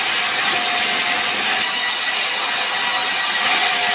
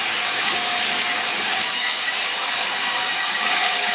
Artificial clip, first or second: second